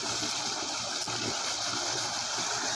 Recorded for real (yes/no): yes